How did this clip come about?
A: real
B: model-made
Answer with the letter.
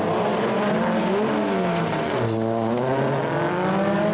A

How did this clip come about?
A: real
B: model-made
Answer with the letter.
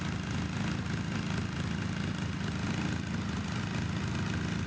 A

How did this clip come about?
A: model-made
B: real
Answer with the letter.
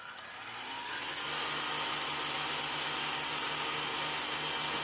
B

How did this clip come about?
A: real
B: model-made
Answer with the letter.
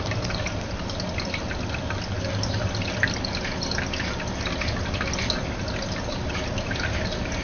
A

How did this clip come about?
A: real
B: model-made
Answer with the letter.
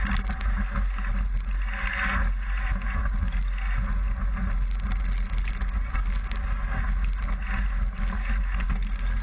A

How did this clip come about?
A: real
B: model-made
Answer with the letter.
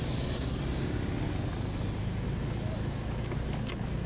A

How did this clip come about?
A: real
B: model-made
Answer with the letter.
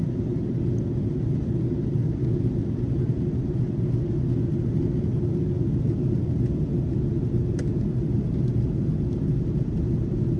A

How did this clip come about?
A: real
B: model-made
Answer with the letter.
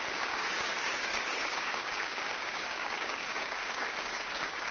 B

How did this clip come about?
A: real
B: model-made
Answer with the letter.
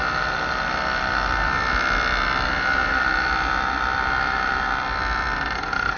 A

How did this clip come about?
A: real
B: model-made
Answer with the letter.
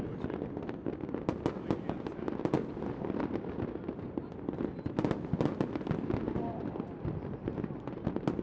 A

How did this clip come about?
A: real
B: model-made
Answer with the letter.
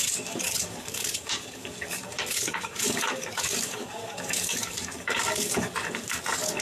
B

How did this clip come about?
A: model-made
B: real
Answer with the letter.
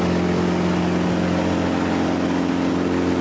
B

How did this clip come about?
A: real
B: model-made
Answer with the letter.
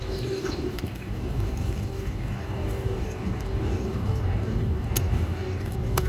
B